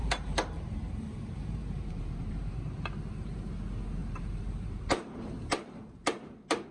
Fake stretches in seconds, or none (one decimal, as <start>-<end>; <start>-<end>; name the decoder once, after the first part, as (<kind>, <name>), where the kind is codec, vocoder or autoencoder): 0.0-3.5 (vocoder, BigVGAN v2); 4.0-5.8

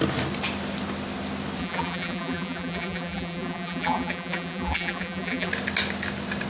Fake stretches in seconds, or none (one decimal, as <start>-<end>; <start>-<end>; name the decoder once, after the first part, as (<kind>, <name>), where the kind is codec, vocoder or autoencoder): 1.6-5.5 (vocoder, BigVGAN v2)